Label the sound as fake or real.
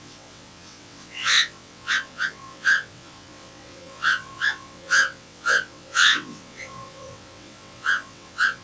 fake